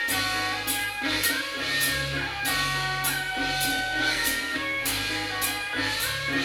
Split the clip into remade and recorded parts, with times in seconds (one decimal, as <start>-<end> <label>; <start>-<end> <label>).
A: 0.0-0.8 recorded; 0.8-1.3 remade; 1.3-3.7 recorded; 3.7-5.0 remade; 5.0-6.4 recorded